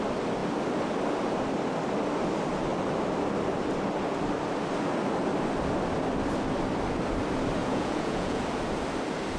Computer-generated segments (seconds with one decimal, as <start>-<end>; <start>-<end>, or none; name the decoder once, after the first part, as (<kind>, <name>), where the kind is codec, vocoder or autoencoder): 7.6-8.4 (vocoder, Vocos)